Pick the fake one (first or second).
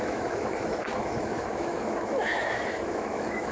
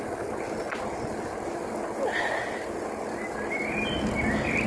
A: first